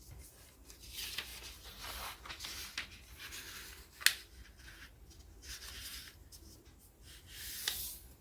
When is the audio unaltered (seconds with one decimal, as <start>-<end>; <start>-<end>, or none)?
0.0-8.2